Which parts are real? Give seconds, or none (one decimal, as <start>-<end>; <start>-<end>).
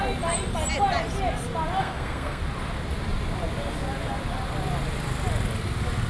0.0-1.8; 2.4-6.1